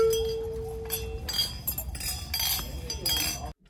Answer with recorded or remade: recorded